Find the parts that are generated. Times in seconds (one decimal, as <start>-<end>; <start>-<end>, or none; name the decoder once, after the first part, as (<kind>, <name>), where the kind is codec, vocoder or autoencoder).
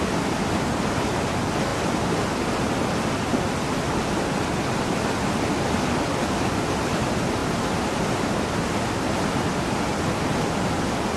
none